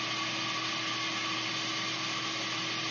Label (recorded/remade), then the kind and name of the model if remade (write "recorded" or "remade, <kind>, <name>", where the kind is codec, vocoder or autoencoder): recorded